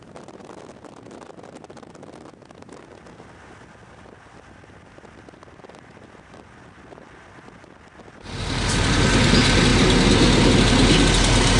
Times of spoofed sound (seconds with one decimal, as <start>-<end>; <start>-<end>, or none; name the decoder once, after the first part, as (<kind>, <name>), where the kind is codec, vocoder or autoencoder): none